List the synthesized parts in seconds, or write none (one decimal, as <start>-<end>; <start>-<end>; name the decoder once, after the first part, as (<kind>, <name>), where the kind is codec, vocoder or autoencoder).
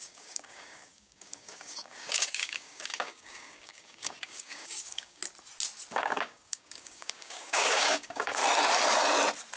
0.0-5.2 (codec, DAC); 5.9-8.4